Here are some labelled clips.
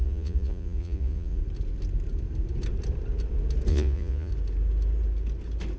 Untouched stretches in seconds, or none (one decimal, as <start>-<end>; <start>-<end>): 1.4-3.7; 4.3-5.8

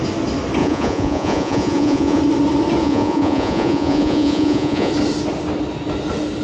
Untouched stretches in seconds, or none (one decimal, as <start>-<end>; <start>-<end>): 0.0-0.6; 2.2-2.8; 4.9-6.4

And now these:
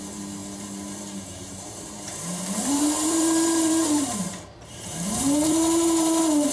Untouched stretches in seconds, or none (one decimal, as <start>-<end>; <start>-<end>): none

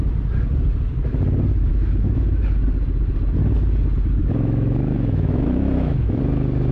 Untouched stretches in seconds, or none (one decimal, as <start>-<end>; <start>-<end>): 0.0-1.7; 2.4-4.2; 6.2-6.7

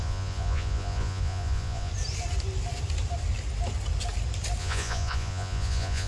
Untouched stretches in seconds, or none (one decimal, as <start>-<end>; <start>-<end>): 1.9-4.6

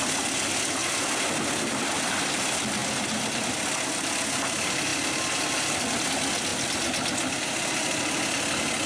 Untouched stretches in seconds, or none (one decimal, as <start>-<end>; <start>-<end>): 0.0-0.8; 1.8-8.9